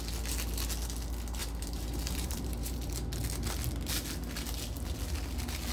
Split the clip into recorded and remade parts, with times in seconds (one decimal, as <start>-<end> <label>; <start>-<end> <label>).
0.0-1.4 recorded; 1.4-2.9 remade; 2.9-5.7 recorded